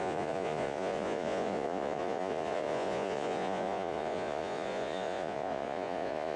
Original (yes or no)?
no